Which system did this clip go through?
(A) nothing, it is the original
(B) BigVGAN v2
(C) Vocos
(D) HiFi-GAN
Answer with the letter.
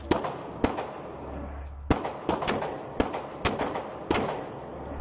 A